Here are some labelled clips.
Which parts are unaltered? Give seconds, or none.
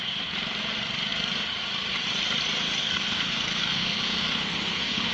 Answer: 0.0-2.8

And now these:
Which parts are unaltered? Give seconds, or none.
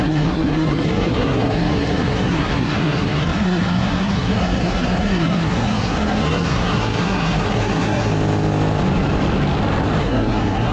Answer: 8.1-10.0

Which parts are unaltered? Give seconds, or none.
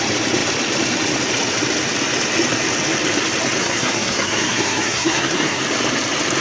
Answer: 0.0-3.6; 5.6-6.4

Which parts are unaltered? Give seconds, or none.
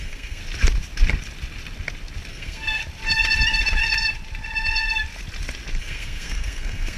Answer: 0.4-2.3; 2.8-5.8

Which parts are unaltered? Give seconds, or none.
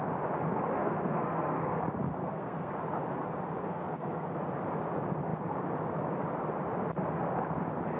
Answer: 0.0-0.8; 1.8-2.2; 2.7-3.7; 4.3-8.0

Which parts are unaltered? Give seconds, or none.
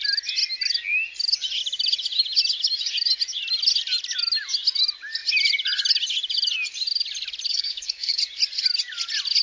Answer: 0.0-7.5; 8.2-9.4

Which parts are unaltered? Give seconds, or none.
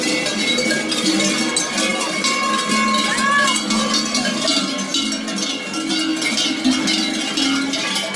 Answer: 0.0-8.2